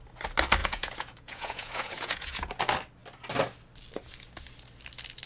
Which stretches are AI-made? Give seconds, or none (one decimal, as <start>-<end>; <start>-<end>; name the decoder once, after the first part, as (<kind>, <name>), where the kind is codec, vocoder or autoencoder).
0.6-2.6 (vocoder, Vocos)